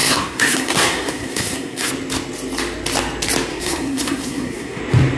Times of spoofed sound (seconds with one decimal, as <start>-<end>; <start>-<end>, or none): 0.0-1.9; 3.5-4.8